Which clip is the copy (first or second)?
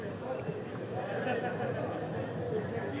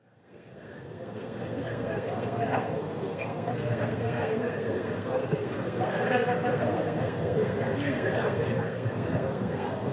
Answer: second